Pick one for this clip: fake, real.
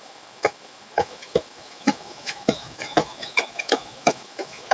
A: fake